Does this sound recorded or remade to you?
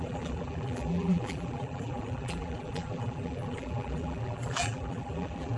remade